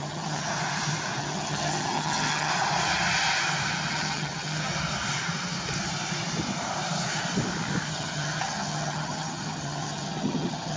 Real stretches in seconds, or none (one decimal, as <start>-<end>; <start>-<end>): 0.5-1.2; 2.5-3.9; 4.7-7.9